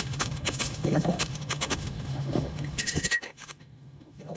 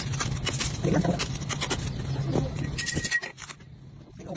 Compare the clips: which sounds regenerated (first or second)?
first